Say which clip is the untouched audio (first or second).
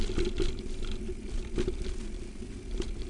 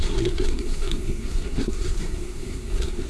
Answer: first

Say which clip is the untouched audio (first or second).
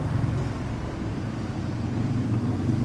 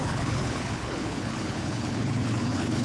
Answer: first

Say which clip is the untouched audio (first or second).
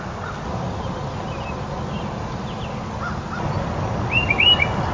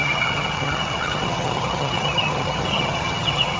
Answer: first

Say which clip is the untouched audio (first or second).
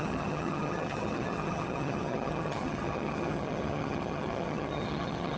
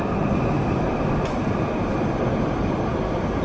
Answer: second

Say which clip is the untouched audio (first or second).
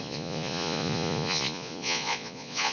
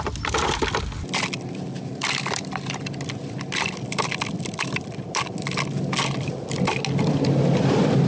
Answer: second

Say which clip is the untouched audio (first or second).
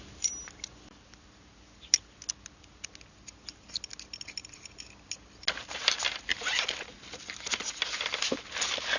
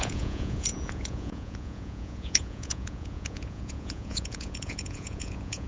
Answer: first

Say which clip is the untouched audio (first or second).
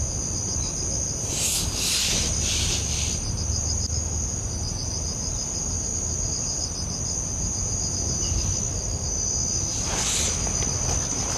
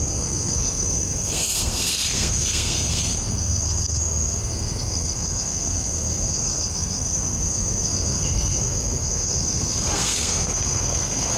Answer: first